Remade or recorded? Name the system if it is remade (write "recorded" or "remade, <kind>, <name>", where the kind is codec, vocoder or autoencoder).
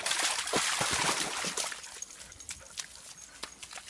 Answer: recorded